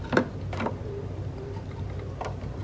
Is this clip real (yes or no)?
yes